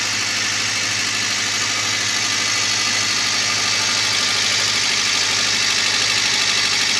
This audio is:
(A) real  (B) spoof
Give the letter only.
A